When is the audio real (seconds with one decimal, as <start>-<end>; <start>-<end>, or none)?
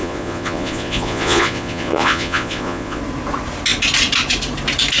3.0-5.0